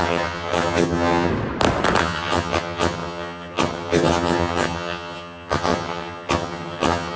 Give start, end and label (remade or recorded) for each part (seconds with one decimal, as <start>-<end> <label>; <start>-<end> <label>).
0.0-1.3 remade; 1.3-2.0 recorded; 2.0-7.2 remade